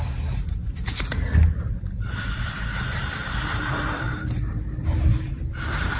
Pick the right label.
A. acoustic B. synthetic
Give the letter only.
B